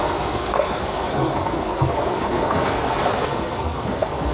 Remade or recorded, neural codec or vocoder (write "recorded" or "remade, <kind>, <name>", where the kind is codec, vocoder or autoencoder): remade, codec, SNAC